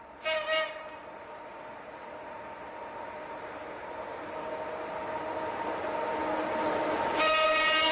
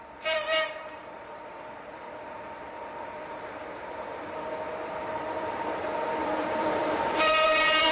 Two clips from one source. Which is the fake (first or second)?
second